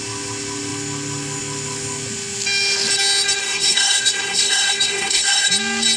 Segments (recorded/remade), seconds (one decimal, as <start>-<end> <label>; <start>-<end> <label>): 0.0-3.4 recorded; 3.4-5.5 remade; 5.5-6.0 recorded